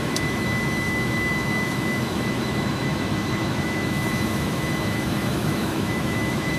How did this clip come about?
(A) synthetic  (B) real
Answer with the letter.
A